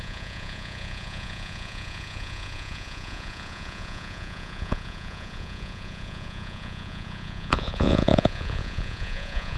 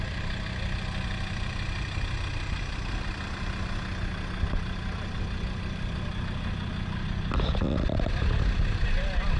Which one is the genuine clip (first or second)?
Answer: second